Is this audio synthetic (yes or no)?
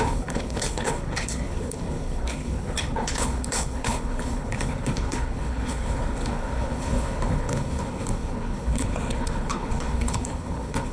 yes